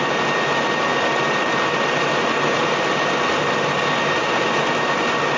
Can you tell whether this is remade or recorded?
recorded